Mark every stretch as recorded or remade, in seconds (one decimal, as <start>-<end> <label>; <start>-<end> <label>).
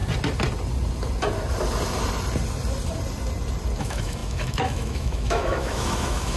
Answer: 0.0-3.8 recorded; 3.8-6.4 remade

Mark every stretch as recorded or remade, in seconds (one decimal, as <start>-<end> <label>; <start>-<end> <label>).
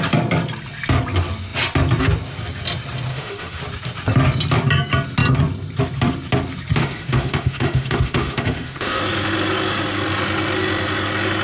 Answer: 0.0-3.1 recorded; 3.1-3.6 remade; 3.6-6.8 recorded; 6.8-9.0 remade; 9.0-11.4 recorded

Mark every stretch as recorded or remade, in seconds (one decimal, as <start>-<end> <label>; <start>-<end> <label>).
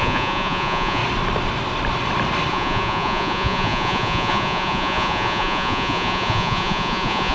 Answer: 0.0-1.0 remade; 1.0-2.5 recorded; 2.5-7.3 remade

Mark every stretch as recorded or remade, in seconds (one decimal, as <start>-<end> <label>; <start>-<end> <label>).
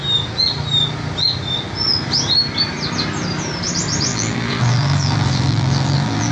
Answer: 0.0-4.1 recorded; 4.1-6.3 remade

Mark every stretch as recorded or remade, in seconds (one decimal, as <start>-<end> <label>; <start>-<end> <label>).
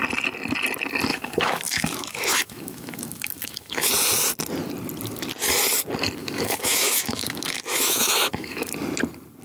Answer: 0.0-1.1 recorded; 1.1-3.9 remade; 3.9-6.2 recorded; 6.2-8.7 remade; 8.7-9.4 recorded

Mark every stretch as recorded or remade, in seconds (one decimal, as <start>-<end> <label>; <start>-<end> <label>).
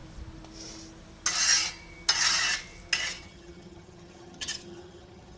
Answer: 0.0-3.2 recorded; 3.2-5.4 remade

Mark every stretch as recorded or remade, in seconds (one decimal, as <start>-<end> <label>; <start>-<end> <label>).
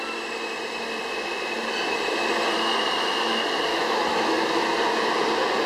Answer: 0.0-3.7 recorded; 3.7-4.5 remade; 4.5-5.7 recorded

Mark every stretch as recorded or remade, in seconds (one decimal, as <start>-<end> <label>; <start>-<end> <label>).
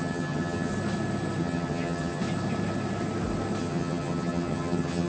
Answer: 0.0-0.7 remade; 0.7-1.4 recorded; 1.4-2.2 remade; 2.2-3.6 recorded; 3.6-5.1 remade